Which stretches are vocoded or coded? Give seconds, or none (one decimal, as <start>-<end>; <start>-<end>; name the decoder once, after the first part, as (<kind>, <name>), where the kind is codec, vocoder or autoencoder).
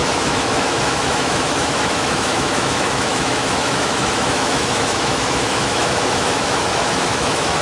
0.0-7.6 (autoencoder, DAC-VAE)